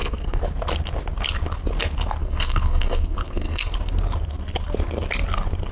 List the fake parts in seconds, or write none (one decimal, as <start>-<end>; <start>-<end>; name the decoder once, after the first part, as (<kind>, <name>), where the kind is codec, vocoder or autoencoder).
0.0-0.5 (codec, SNAC); 2.2-3.7